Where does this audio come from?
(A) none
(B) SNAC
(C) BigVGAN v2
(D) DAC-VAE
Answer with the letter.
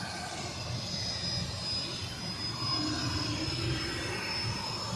A